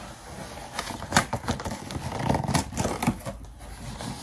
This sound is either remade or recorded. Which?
recorded